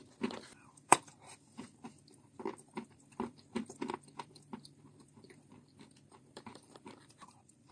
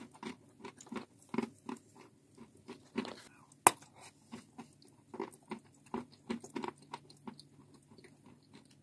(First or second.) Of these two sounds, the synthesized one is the first